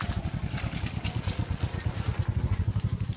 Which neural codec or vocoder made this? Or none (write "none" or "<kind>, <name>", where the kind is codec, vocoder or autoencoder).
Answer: none